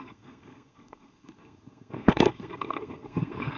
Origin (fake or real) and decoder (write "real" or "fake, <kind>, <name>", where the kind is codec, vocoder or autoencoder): fake, codec, SNAC